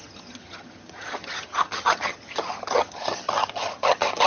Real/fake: fake